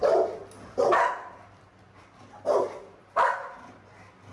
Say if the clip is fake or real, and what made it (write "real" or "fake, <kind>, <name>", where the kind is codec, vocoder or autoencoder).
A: real